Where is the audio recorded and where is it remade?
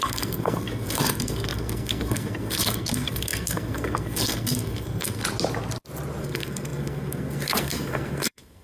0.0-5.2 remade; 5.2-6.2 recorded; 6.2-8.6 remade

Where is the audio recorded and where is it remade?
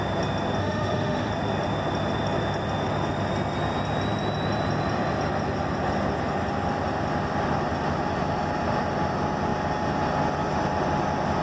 0.0-0.6 recorded; 0.6-1.3 remade; 1.3-11.4 recorded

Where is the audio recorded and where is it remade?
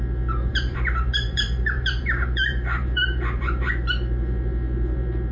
0.0-0.5 recorded; 0.5-3.7 remade; 3.7-5.3 recorded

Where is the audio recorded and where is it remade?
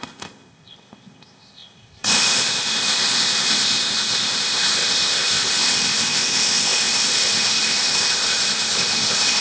0.0-9.4 remade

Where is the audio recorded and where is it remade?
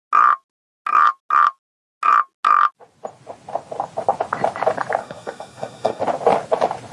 0.0-5.0 recorded; 5.0-6.0 remade; 6.0-6.9 recorded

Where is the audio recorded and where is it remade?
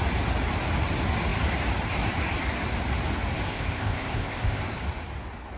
0.0-3.5 recorded; 3.5-4.6 remade; 4.6-5.6 recorded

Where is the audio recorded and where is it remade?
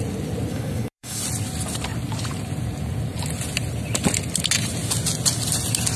0.0-0.5 recorded; 0.5-1.2 remade; 1.2-6.0 recorded